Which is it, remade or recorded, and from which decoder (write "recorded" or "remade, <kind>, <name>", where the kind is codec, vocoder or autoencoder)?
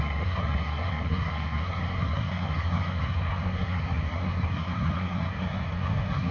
remade, codec, SNAC